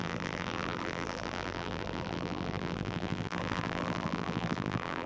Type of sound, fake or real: fake